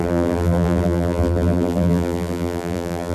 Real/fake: fake